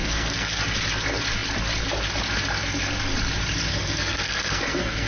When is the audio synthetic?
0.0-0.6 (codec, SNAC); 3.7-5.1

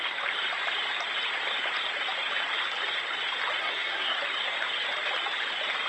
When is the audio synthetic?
3.6-4.2 (codec, SNAC)

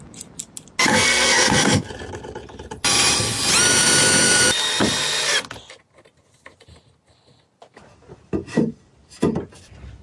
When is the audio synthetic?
0.9-1.9 (codec, SNAC)

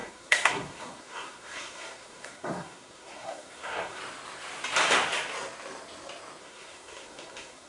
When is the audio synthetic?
0.0-4.0 (codec, SNAC); 6.4-7.7

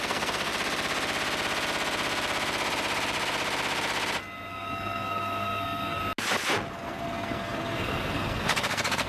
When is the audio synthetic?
0.0-0.5 (codec, SNAC); 4.5-6.0; 6.7-9.1

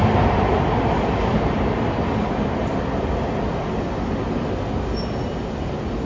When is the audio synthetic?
none

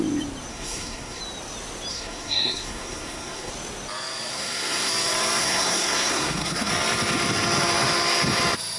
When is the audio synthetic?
0.5-1.2 (codec, SNAC); 1.9-3.5; 4.3-4.9; 5.4-6.7

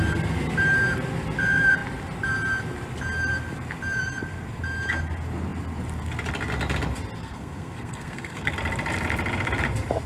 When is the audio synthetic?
7.2-8.5 (codec, SNAC)